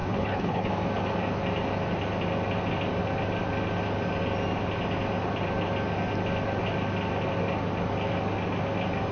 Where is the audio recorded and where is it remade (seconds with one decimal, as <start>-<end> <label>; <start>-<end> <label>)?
0.0-0.7 remade; 0.7-9.1 recorded